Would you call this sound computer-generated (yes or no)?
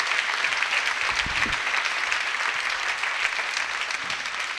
no